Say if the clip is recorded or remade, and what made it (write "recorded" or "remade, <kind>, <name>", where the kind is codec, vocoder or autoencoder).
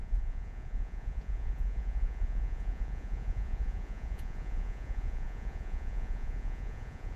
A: remade, vocoder, Vocos